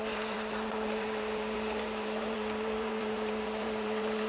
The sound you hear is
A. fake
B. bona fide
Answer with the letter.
A